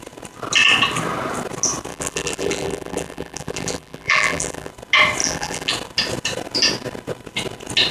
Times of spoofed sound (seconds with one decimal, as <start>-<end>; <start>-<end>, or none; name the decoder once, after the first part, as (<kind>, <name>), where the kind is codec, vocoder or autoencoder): 1.9-4.7 (vocoder, BigVGAN v2); 5.2-5.7